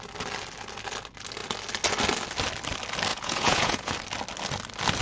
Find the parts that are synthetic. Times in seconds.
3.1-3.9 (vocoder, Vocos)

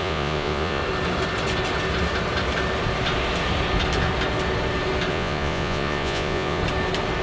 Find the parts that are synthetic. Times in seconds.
0.0-0.8 (vocoder, Vocos); 5.1-6.6

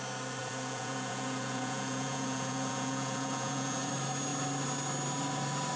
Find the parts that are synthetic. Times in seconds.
0.4-3.9 (vocoder, Vocos)

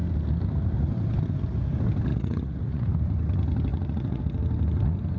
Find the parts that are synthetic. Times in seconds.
2.1-2.9 (vocoder, Vocos); 3.7-4.2

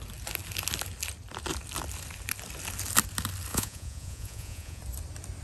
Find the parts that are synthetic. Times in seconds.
3.5-4.8 (vocoder, Vocos)

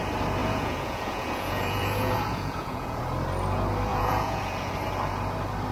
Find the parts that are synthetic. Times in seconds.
0.4-3.0 (vocoder, Vocos); 3.9-4.7

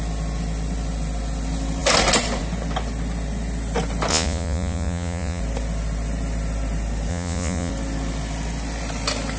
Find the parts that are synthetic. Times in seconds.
4.1-5.4 (vocoder, Vocos); 7.1-7.7

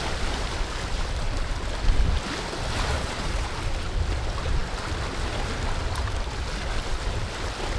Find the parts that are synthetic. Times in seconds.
2.9-3.5 (vocoder, Vocos)